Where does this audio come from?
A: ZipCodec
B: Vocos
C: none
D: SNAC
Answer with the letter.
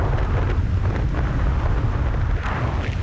C